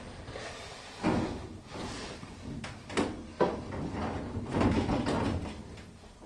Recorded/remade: recorded